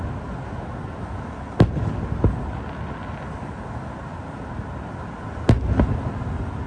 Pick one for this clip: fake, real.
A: real